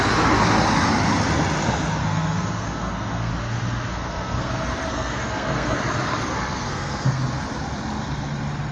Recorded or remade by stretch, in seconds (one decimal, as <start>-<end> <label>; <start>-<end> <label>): 0.0-2.0 recorded; 2.0-3.3 remade; 3.3-3.9 recorded; 3.9-4.5 remade; 4.5-4.9 recorded; 4.9-5.8 remade; 5.8-6.4 recorded; 6.4-7.2 remade; 7.2-8.7 recorded